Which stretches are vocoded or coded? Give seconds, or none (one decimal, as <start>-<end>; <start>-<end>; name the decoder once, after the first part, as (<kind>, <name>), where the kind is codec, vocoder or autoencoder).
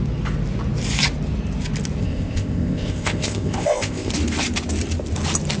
2.0-4.1 (codec, ZipCodec)